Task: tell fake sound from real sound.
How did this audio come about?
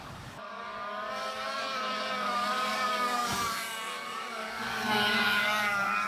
fake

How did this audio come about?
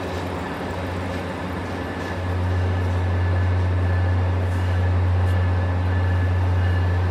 real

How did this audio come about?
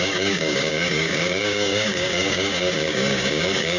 fake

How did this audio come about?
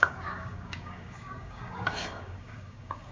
fake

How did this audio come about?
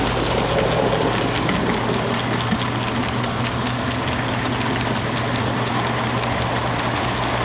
real